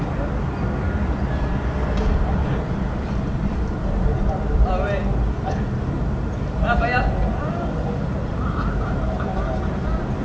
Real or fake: real